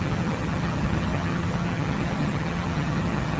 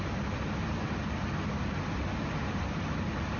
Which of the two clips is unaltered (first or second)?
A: second